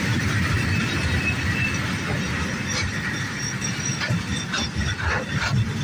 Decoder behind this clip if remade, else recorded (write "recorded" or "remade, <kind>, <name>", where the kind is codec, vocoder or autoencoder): remade, vocoder, BigVGAN v2